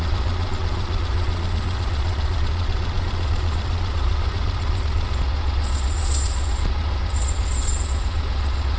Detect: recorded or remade remade